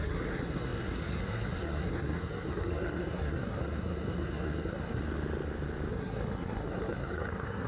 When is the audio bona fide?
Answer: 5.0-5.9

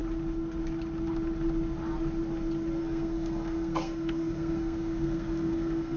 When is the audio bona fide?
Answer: 0.0-2.8

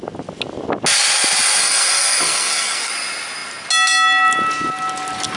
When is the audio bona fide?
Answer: 0.0-1.6; 2.9-5.4

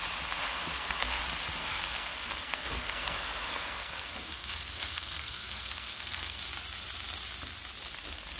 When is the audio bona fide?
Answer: 0.0-0.5; 1.2-1.6; 6.4-8.4

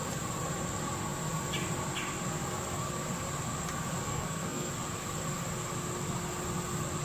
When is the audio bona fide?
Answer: 0.0-4.0; 4.7-7.0

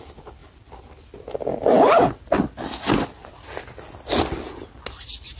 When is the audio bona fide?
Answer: 0.0-5.4